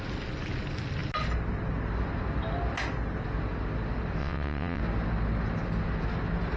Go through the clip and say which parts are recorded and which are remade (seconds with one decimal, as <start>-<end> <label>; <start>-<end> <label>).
0.0-4.2 recorded; 4.2-4.8 remade; 4.8-6.6 recorded